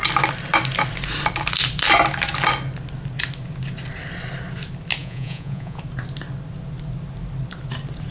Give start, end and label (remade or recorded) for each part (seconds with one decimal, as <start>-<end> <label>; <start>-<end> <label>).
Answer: 0.0-5.0 recorded; 5.0-5.8 remade; 5.8-8.1 recorded